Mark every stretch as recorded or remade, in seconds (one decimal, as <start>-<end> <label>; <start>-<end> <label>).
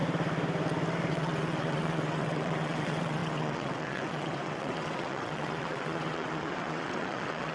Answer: 0.0-1.1 recorded; 1.1-7.5 remade